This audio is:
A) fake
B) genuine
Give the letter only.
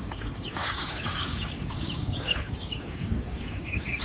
A